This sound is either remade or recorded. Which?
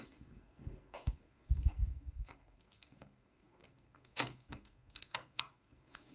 remade